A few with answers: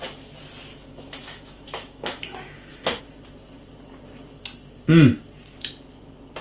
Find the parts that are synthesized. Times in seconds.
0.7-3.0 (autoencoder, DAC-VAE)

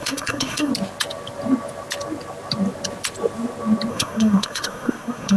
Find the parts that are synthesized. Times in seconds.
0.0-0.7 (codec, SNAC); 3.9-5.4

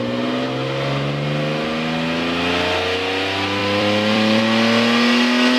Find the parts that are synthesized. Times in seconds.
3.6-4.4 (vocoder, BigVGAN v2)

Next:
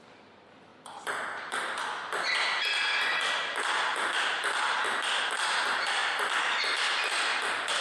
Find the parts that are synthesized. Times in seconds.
none

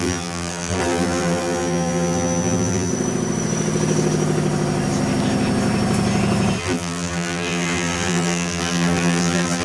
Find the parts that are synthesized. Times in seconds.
0.0-2.9 (vocoder, BigVGAN v2); 6.6-9.6

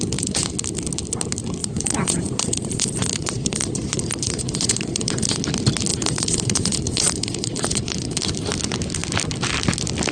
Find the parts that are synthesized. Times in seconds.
1.6-5.4 (vocoder, Vocos); 5.9-8.2